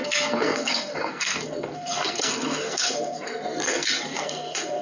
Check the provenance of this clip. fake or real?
fake